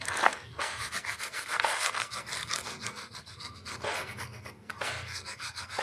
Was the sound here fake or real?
fake